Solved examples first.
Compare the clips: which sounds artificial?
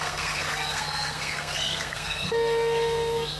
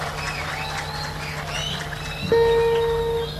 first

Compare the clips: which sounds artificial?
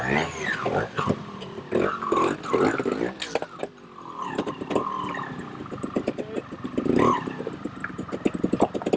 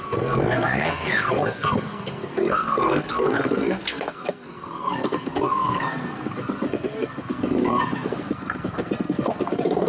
second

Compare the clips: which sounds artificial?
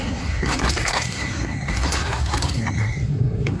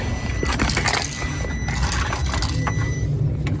first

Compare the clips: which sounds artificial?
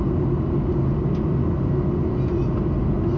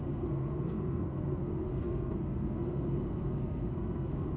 second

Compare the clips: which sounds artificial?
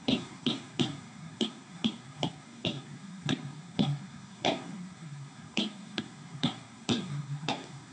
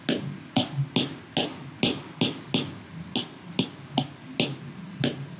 first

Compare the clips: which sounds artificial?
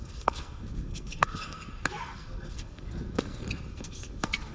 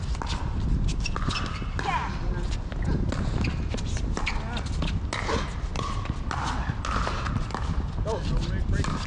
first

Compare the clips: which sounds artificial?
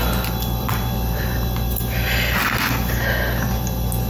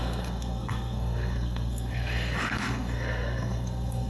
second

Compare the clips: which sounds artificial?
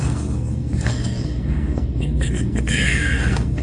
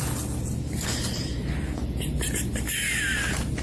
first